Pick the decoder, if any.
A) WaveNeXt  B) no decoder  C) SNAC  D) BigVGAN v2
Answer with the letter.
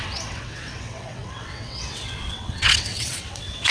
A